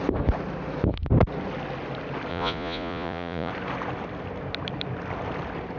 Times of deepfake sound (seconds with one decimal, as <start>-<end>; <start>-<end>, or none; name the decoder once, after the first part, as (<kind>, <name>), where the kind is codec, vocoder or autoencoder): 2.3-3.5 (vocoder, Vocos)